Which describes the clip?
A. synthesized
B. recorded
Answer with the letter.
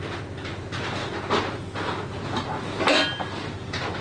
B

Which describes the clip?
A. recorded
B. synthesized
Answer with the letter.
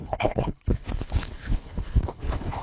B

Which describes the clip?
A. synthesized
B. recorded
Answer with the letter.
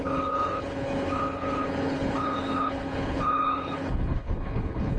A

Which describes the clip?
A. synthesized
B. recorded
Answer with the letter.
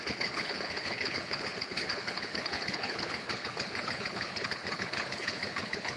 A